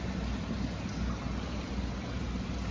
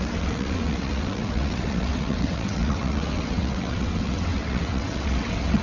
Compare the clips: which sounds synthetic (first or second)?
second